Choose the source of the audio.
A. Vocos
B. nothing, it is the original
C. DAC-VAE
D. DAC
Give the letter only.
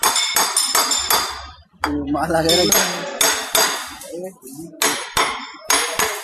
B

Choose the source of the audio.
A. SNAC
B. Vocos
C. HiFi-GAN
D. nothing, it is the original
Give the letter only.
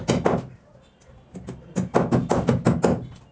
D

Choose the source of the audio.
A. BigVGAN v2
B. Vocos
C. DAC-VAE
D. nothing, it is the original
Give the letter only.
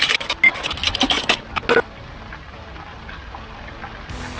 D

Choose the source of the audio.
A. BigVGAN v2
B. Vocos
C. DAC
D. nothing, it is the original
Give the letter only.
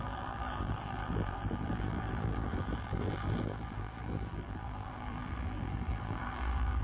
A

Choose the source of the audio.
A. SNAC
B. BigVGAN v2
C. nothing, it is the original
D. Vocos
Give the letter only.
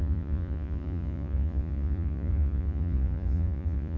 D